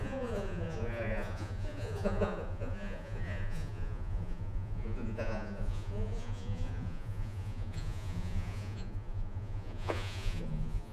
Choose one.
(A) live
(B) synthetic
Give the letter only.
B